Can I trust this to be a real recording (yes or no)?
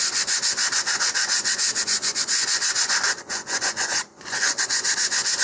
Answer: no